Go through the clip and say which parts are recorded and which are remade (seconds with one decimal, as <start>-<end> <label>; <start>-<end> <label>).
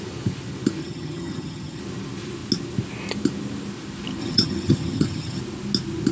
0.0-0.8 recorded; 0.8-1.8 remade; 1.8-4.2 recorded; 4.2-5.4 remade; 5.4-6.1 recorded